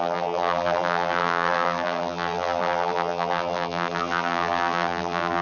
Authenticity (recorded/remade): remade